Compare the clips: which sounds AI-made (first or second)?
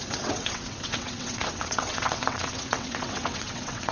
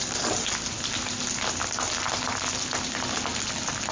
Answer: first